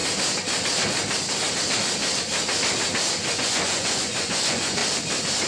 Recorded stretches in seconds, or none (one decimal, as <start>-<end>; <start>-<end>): 0.0-3.3; 4.8-5.5